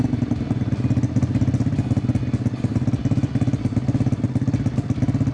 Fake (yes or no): no